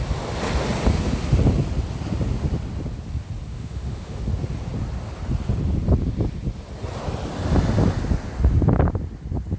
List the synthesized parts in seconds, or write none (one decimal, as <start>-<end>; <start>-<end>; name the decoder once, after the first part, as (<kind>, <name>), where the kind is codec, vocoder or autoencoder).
3.5-4.2 (autoencoder, DAC-VAE)